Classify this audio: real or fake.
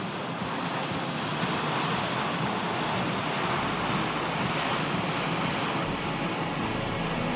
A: real